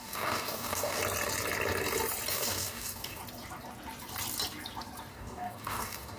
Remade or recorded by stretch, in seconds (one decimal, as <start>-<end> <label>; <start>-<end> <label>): 0.0-1.0 remade; 1.0-2.3 recorded; 2.3-3.2 remade; 3.2-5.1 recorded; 5.1-6.2 remade